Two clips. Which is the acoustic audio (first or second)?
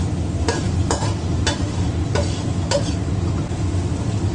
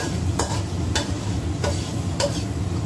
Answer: first